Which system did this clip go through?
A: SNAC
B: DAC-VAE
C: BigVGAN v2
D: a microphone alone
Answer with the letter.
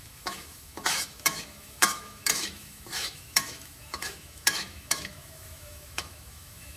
B